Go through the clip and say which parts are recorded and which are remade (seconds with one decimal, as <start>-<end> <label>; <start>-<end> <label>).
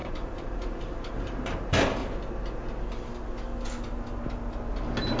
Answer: 0.0-2.0 remade; 2.0-5.2 recorded